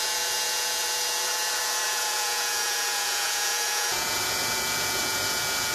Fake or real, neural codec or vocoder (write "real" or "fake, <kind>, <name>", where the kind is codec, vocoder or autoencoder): fake, vocoder, Vocos